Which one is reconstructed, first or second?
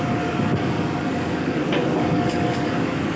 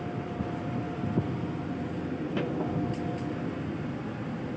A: first